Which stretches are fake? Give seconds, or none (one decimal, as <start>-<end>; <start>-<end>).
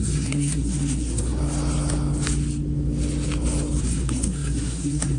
0.0-1.4; 3.8-5.2